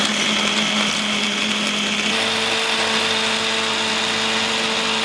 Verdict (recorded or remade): recorded